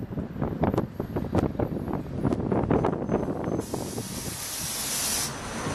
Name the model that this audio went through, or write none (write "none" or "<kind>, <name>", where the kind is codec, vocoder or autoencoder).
none